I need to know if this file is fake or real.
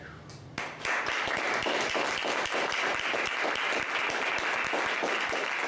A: real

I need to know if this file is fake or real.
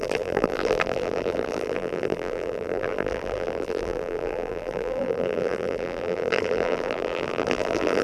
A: fake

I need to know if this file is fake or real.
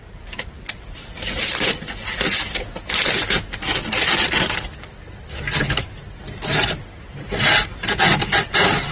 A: real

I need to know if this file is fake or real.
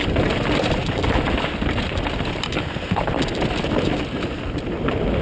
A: real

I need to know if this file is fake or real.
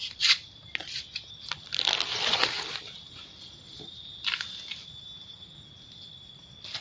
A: real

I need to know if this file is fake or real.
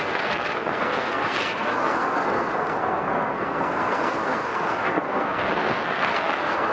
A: fake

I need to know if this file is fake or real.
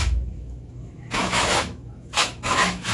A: fake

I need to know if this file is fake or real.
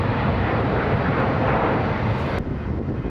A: real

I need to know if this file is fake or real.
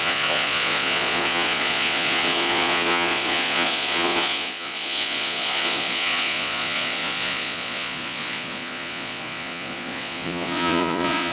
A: fake